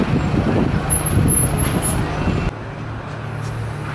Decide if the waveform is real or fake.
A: real